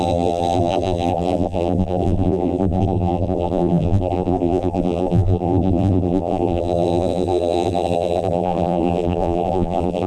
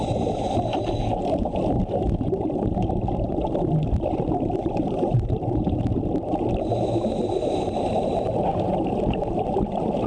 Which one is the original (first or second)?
second